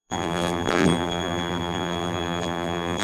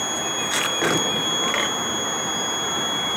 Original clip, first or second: second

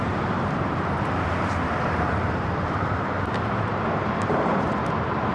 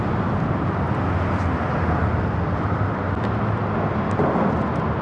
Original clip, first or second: second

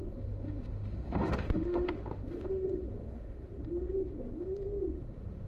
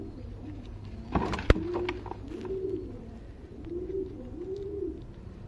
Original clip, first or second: second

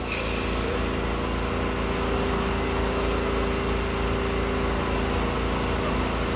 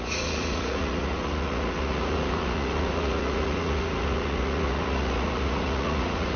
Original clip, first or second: first